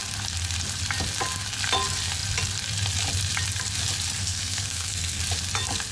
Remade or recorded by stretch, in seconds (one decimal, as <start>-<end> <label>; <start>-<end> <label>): 0.0-4.2 recorded; 4.2-5.2 remade; 5.2-5.9 recorded